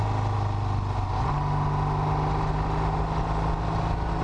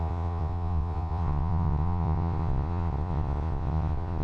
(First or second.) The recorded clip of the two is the first